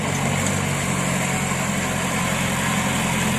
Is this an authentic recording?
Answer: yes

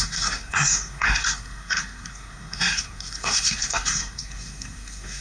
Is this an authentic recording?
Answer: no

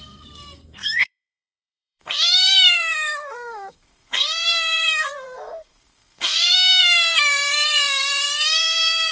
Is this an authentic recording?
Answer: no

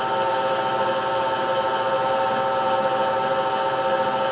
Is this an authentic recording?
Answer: yes